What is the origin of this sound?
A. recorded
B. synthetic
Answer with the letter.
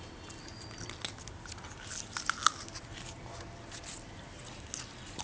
A